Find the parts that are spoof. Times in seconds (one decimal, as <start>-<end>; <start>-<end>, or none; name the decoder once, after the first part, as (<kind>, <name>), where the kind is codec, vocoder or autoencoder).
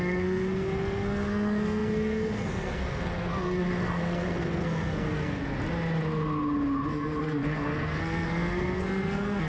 0.0-5.4 (codec, SNAC); 6.9-9.5